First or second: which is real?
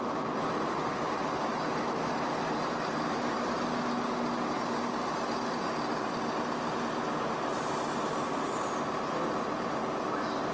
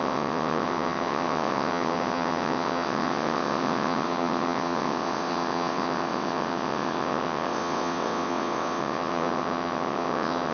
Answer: first